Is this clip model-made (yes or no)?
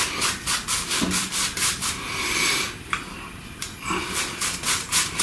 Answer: yes